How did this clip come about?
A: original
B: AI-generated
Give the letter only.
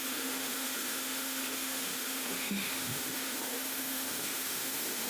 B